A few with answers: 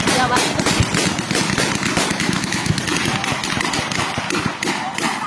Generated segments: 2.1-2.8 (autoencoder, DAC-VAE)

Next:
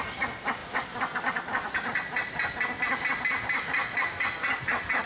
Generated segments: none

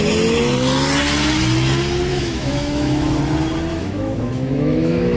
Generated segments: 2.1-3.2 (autoencoder, DAC-VAE); 3.7-5.2

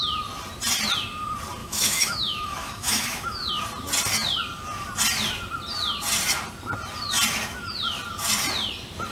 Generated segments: 1.6-3.5 (autoencoder, DAC-VAE)

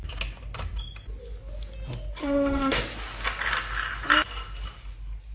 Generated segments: 2.2-2.8 (autoencoder, DAC-VAE)

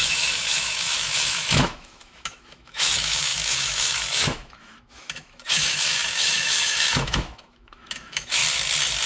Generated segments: 0.0-8.4 (autoencoder, DAC-VAE)

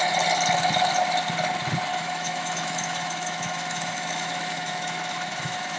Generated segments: 1.9-5.8 (autoencoder, DAC-VAE)